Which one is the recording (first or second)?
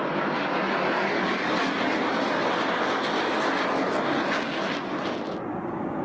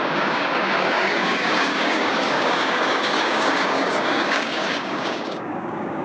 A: first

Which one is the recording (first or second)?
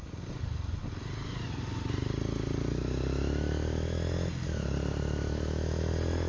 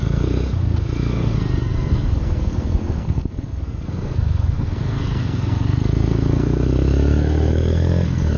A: first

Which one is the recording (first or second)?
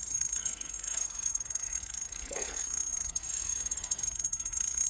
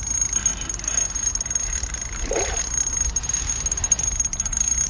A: second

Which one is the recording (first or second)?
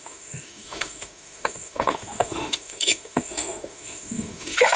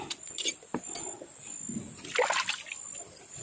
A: second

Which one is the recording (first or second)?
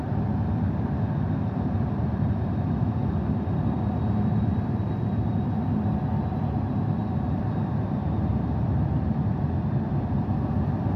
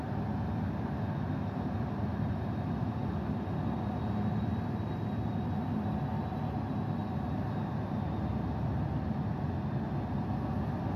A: second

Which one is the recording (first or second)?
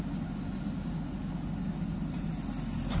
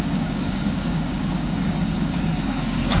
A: first